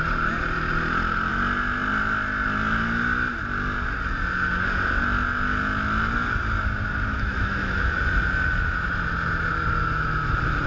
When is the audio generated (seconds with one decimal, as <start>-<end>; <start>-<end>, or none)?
7.1-7.8